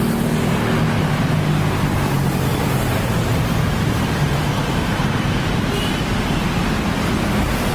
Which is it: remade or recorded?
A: recorded